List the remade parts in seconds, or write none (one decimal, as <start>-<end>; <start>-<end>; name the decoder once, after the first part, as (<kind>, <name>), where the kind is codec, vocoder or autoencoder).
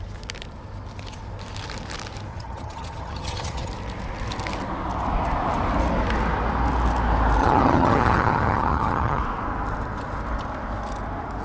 2.3-3.7 (vocoder, HiFi-GAN); 7.4-9.2